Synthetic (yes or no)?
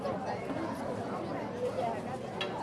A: no